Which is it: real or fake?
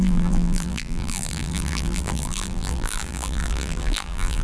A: fake